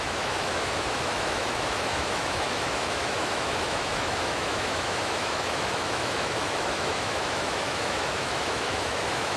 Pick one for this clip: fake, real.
fake